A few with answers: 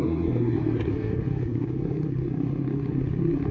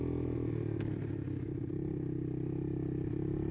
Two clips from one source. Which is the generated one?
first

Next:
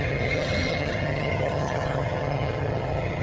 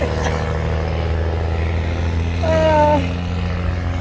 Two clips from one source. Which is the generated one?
first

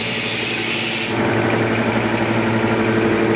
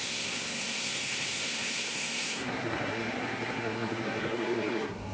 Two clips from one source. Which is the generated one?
second